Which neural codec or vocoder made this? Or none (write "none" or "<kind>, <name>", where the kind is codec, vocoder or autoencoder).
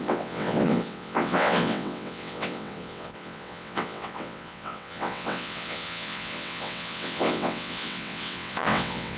vocoder, WaveNeXt